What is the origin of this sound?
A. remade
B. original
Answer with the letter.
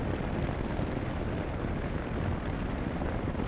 B